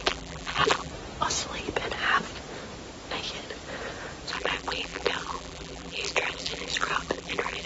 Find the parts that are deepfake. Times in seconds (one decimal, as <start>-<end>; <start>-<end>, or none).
0.0-0.9; 4.3-7.7